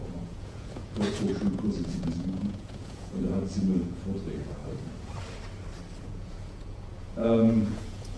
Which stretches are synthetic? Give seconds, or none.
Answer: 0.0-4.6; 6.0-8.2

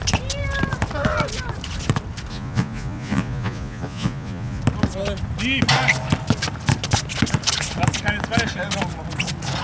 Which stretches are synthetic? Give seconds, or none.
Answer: 2.3-4.6